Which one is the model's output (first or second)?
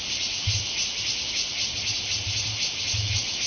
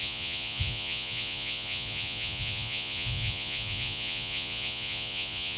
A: second